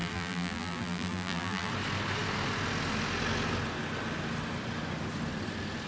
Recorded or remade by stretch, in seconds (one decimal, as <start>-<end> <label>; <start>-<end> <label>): 0.0-1.7 remade; 1.7-5.9 recorded

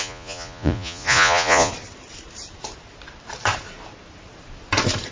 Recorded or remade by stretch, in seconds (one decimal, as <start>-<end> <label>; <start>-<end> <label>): 0.0-1.7 remade; 1.7-5.1 recorded

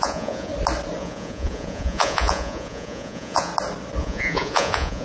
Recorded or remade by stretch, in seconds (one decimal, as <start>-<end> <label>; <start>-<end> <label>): 0.0-0.5 remade; 0.5-1.0 recorded; 1.0-3.5 remade; 3.5-4.0 recorded; 4.0-5.0 remade